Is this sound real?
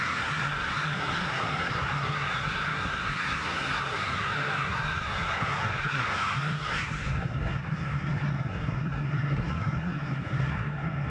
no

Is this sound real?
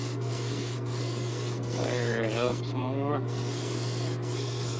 no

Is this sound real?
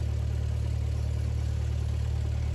yes